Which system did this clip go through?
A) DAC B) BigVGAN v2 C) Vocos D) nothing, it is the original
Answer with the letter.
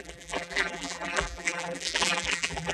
B